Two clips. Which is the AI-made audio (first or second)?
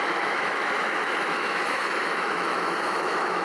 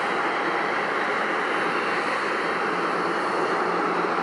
first